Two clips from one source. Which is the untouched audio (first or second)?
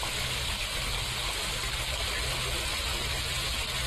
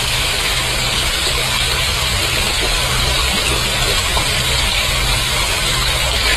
first